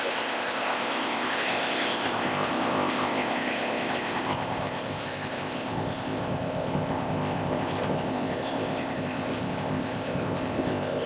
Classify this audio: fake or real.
fake